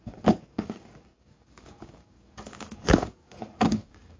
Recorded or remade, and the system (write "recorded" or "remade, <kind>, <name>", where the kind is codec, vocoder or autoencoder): remade, codec, DAC